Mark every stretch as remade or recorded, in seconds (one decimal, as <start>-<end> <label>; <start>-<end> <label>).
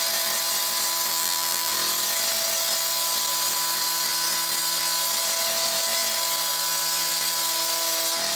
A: 0.0-1.1 recorded; 1.1-1.7 remade; 1.7-8.4 recorded